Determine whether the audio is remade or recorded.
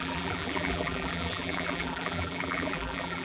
remade